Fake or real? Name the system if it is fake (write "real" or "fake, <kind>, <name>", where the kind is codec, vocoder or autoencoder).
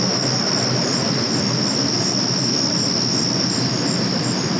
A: real